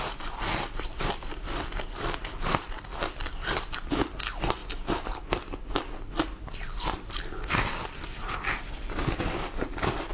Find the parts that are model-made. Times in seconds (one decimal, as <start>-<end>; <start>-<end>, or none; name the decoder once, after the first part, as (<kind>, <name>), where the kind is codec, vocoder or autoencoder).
0.0-4.6 (vocoder, BigVGAN v2); 7.5-10.1